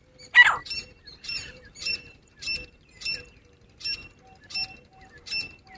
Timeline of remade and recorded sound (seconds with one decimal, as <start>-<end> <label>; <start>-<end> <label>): 0.0-0.6 recorded; 0.6-3.2 remade; 3.2-5.8 recorded